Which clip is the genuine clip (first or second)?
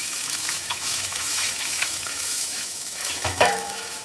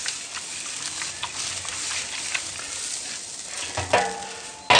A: second